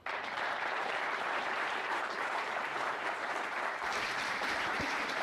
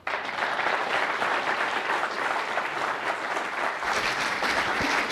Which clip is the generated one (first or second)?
first